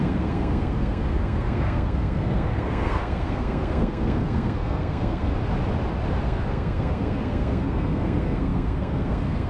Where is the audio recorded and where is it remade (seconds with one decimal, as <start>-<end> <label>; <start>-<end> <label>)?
0.0-5.3 remade; 5.3-6.2 recorded; 6.2-9.5 remade